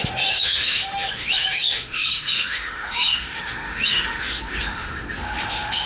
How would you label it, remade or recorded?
remade